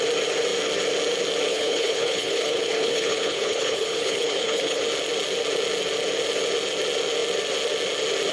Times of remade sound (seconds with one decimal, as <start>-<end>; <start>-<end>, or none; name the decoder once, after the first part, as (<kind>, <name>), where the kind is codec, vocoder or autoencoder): 1.5-4.8 (codec, HILCodec)

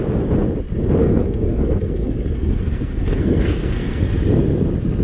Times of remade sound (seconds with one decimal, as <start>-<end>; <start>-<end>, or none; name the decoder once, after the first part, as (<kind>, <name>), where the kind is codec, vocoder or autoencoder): 1.0-4.0 (codec, SNAC)